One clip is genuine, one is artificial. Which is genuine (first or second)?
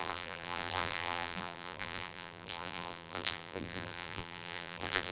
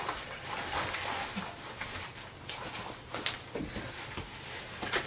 second